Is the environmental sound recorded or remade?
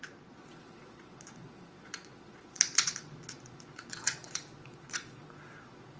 remade